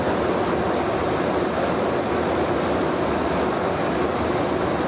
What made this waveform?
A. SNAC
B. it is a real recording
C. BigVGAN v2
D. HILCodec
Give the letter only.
B